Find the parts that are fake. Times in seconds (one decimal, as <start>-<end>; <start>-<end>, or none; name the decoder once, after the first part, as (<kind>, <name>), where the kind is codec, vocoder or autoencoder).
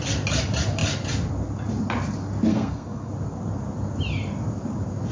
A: 2.5-3.1 (codec, SNAC)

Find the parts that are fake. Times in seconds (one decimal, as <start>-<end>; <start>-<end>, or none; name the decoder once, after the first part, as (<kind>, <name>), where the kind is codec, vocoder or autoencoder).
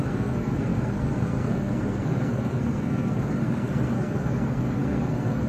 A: 0.0-5.5 (codec, SNAC)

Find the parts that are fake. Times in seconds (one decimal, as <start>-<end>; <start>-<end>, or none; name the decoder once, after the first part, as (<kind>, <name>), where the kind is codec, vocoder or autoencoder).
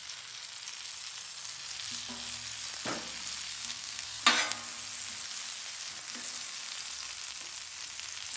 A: 3.5-4.2 (codec, SNAC)